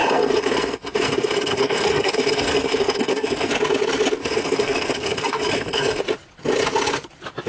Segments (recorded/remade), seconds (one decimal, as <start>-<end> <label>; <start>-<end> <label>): 0.0-3.5 remade; 3.5-4.2 recorded; 4.2-6.0 remade; 6.0-7.5 recorded